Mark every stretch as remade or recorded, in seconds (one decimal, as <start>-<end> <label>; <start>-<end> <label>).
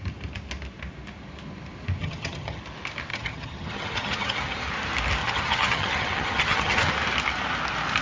0.0-2.0 recorded; 2.0-2.6 remade; 2.6-3.1 recorded; 3.1-4.7 remade; 4.7-5.2 recorded; 5.2-6.9 remade; 6.9-8.0 recorded